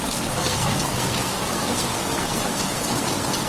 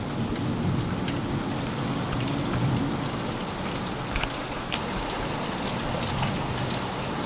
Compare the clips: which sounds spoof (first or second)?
first